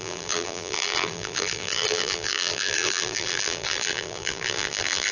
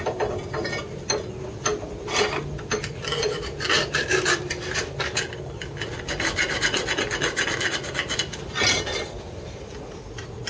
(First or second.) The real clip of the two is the second